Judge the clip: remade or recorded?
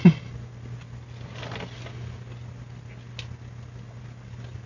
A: recorded